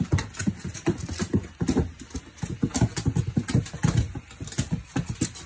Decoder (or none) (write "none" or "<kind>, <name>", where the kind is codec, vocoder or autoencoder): none